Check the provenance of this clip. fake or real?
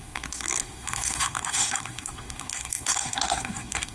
fake